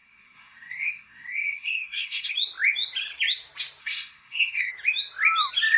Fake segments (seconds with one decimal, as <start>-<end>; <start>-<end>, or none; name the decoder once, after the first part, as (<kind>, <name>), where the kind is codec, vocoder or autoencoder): 0.0-2.3 (codec, SNAC); 3.8-4.7